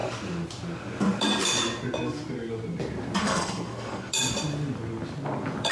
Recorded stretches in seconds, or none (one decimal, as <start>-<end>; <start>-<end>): 0.0-3.2; 4.1-5.7